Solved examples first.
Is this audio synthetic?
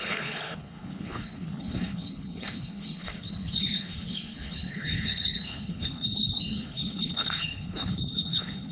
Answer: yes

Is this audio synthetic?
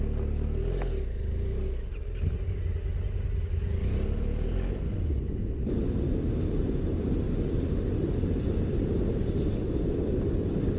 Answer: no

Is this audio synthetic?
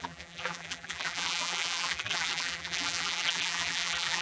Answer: yes